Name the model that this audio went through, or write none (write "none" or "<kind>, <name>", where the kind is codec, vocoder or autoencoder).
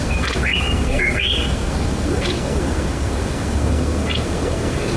codec, SNAC